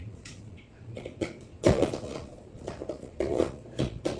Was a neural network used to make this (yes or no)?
yes